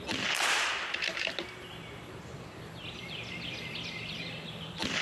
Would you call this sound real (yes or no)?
no